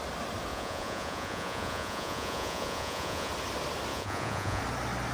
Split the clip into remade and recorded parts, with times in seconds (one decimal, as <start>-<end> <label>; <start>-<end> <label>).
0.0-0.5 recorded; 0.5-3.3 remade; 3.3-3.9 recorded; 3.9-4.6 remade; 4.6-5.1 recorded